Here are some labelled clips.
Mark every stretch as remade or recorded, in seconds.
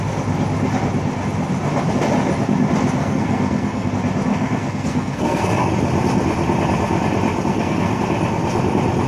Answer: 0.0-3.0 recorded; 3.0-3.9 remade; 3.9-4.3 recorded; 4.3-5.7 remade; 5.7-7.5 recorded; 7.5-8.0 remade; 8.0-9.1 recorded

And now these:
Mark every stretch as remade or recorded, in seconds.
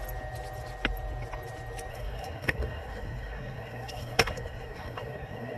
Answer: 0.0-1.9 recorded; 1.9-5.6 remade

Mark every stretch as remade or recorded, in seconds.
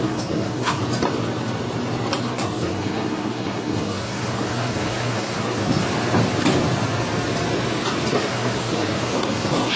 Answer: 0.0-0.8 remade; 0.8-2.2 recorded; 2.2-5.8 remade; 5.8-8.1 recorded; 8.1-9.8 remade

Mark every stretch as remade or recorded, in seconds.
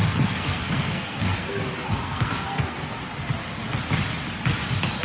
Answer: 0.0-3.0 remade; 3.0-5.0 recorded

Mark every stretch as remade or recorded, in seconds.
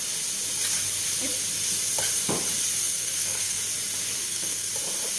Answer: 0.0-2.8 recorded; 2.8-3.6 remade; 3.6-4.2 recorded; 4.2-4.7 remade; 4.7-5.2 recorded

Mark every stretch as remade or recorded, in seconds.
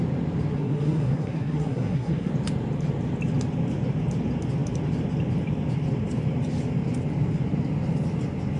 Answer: 0.0-0.5 recorded; 0.5-2.3 remade; 2.3-8.6 recorded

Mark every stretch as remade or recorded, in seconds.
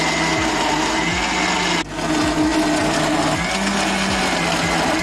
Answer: 0.0-5.0 recorded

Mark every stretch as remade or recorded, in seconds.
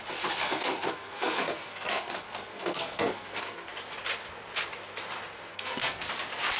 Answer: 0.0-0.4 recorded; 0.4-3.7 remade; 3.7-5.5 recorded; 5.5-6.1 remade; 6.1-6.6 recorded